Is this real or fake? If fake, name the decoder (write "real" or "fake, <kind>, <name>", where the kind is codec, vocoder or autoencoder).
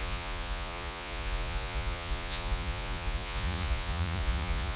fake, vocoder, Vocos